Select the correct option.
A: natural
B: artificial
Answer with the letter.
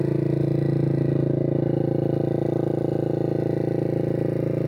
A